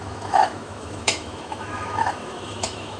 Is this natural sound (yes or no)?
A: no